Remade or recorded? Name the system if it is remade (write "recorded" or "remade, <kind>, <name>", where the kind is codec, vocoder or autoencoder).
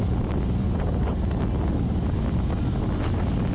recorded